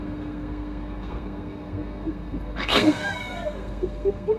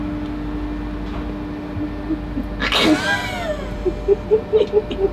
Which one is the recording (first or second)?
second